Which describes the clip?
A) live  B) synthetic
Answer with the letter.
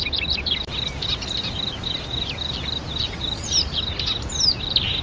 A